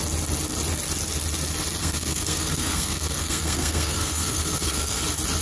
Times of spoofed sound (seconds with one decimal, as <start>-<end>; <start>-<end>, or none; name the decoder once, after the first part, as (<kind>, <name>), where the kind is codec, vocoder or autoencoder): 1.8-5.0 (codec, SNAC)